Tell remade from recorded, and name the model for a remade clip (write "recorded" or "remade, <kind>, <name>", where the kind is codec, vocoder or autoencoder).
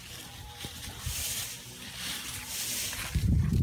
recorded